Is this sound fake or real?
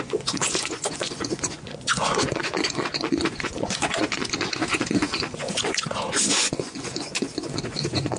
fake